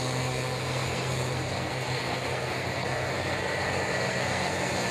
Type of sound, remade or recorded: remade